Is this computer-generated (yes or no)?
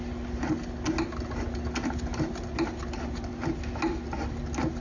no